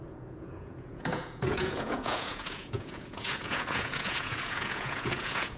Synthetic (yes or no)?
yes